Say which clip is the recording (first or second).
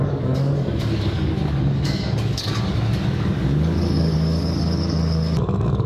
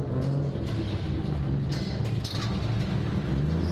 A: second